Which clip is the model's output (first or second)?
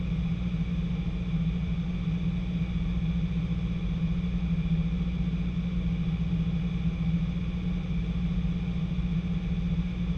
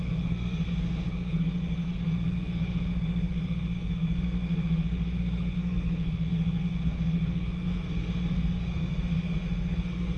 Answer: second